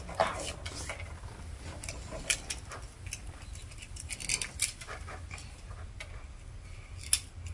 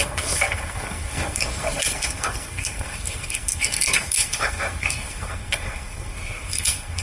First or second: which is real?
first